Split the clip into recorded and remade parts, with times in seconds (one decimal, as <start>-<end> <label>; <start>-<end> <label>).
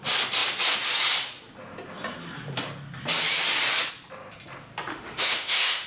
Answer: 0.0-4.9 recorded; 4.9-5.9 remade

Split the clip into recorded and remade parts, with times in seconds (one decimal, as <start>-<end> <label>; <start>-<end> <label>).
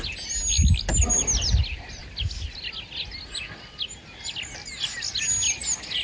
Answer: 0.0-6.0 recorded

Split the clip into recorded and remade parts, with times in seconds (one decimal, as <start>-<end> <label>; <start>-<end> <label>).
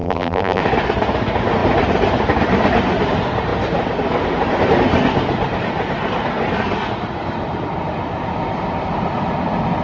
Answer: 0.0-0.6 remade; 0.6-9.8 recorded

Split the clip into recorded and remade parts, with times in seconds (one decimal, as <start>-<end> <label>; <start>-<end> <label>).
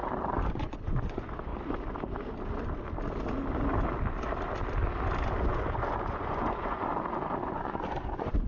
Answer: 0.0-0.5 recorded; 0.5-1.5 remade; 1.5-5.4 recorded; 5.4-6.9 remade; 6.9-7.5 recorded; 7.5-8.5 remade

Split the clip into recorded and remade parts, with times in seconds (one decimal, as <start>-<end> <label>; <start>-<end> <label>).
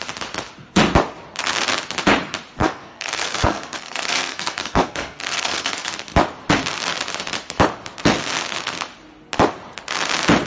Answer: 0.0-2.6 recorded; 2.6-5.9 remade; 5.9-10.5 recorded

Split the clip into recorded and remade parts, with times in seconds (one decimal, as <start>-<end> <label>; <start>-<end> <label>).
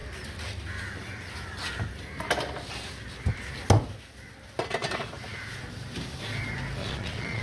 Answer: 0.0-6.8 recorded; 6.8-7.4 remade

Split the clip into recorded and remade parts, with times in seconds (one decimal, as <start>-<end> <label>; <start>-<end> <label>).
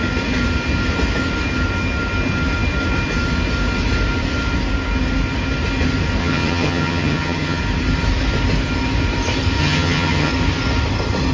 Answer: 0.0-6.2 recorded; 6.2-7.6 remade; 7.6-9.6 recorded; 9.6-10.3 remade; 10.3-11.3 recorded